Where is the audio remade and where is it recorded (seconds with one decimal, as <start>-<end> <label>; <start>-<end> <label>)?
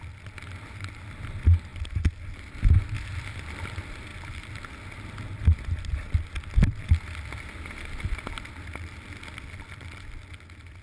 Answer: 0.0-10.8 recorded